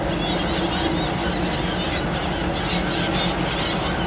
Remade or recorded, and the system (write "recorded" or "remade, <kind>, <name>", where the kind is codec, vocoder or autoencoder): recorded